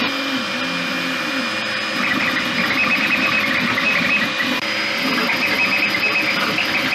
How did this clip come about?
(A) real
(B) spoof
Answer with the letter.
A